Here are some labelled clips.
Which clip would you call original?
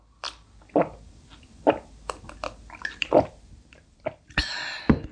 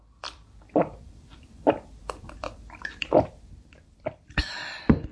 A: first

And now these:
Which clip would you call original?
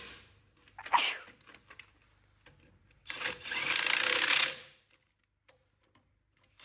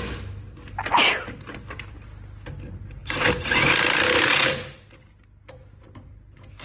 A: second